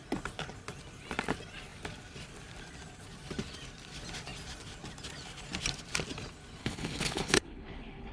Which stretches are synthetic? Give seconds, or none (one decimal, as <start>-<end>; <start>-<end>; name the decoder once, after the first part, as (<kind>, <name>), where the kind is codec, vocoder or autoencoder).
6.6-8.1 (codec, HILCodec)